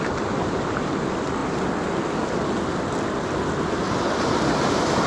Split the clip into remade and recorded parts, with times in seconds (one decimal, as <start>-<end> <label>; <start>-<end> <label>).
0.0-5.1 recorded